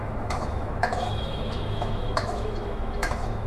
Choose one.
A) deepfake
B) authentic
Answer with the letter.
A